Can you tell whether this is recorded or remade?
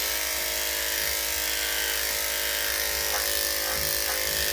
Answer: recorded